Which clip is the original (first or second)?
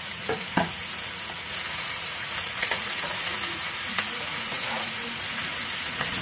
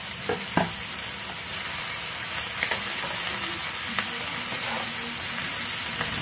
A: second